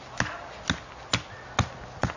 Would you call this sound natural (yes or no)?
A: yes